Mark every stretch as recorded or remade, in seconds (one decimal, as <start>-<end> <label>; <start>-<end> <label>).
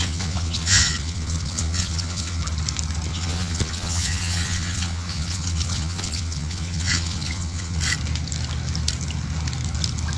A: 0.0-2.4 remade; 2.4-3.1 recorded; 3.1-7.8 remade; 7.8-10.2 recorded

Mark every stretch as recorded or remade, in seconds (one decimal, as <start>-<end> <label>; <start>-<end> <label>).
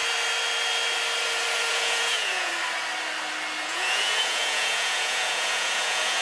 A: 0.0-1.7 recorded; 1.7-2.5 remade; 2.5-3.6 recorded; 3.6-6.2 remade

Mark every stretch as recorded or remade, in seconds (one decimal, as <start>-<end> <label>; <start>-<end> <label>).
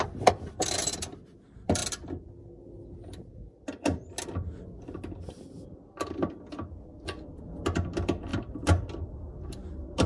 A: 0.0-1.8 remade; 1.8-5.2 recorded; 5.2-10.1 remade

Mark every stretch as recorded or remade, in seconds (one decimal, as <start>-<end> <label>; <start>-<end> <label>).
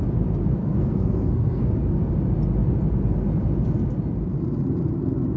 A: 0.0-0.6 recorded; 0.6-2.0 remade; 2.0-5.4 recorded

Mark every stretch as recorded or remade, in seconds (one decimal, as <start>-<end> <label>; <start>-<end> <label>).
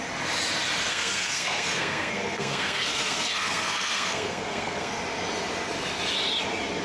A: 0.0-0.9 recorded; 0.9-5.0 remade; 5.0-6.8 recorded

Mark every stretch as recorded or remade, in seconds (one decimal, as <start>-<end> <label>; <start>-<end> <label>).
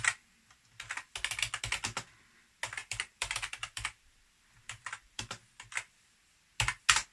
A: 0.0-2.8 recorded; 2.8-5.2 remade; 5.2-7.1 recorded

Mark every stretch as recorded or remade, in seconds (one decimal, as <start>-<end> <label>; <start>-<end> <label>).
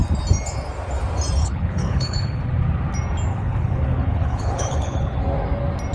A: 0.0-1.4 recorded; 1.4-2.4 remade; 2.4-3.3 recorded; 3.3-5.2 remade; 5.2-5.9 recorded